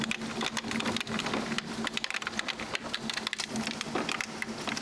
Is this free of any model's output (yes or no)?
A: yes